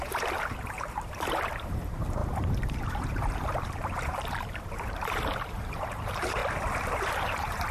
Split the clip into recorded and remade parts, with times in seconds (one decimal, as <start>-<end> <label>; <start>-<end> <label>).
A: 0.0-6.4 remade; 6.4-7.0 recorded; 7.0-7.7 remade